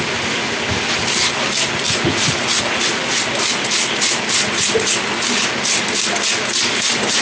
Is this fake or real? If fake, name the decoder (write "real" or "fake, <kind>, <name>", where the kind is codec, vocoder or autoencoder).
real